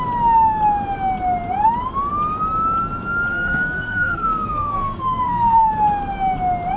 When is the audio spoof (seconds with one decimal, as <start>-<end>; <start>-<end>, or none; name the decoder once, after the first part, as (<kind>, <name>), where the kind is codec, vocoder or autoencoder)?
3.3-5.7 (codec, SNAC)